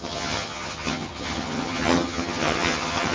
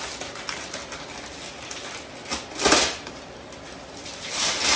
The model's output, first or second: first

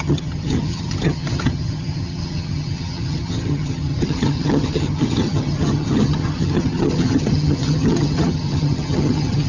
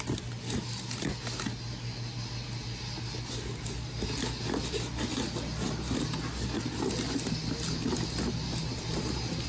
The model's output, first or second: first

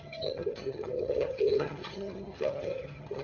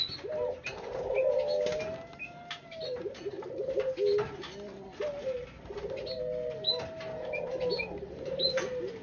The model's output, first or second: first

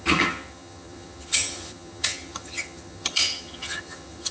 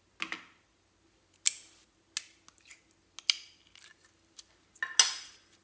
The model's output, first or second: first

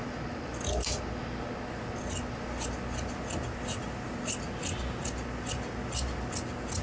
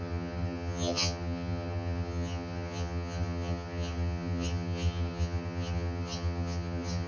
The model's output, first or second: second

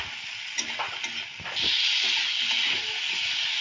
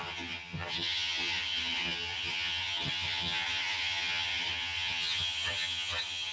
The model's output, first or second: second